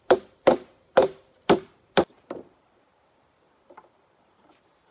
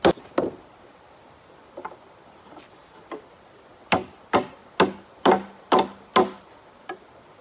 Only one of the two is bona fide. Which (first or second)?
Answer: second